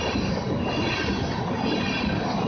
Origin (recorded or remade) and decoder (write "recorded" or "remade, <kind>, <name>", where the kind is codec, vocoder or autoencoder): recorded